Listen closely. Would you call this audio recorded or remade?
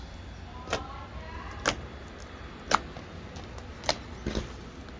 recorded